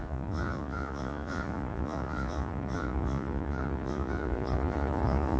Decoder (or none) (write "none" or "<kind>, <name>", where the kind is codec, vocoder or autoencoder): vocoder, Vocos